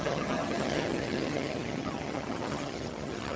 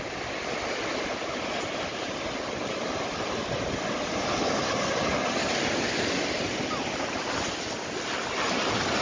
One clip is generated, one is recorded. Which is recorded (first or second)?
second